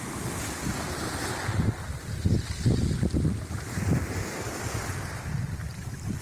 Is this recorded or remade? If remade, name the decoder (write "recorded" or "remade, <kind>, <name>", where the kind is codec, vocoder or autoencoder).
recorded